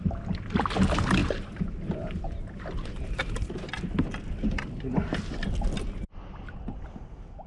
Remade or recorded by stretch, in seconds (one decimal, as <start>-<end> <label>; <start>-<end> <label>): 0.0-1.2 recorded; 1.2-3.7 remade; 3.7-7.5 recorded